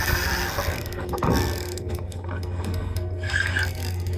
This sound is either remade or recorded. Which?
remade